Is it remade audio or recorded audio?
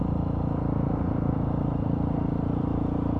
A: remade